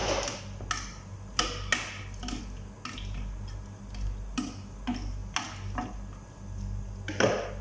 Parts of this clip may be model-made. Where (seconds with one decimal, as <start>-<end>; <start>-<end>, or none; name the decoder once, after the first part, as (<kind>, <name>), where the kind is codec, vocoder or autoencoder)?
none